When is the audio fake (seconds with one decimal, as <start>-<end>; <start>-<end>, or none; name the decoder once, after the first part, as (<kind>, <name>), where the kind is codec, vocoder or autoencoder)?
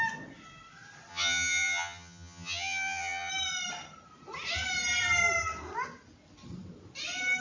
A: 1.1-3.3 (vocoder, HiFi-GAN)